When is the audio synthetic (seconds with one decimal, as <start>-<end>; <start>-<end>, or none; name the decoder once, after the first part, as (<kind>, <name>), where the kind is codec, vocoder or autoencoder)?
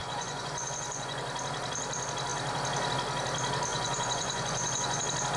0.0-1.2 (vocoder, Vocos); 3.7-5.0